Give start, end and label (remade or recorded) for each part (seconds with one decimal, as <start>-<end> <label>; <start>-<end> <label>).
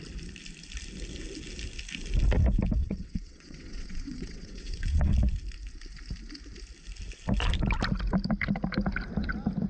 0.0-2.8 recorded; 2.8-5.1 remade; 5.1-9.7 recorded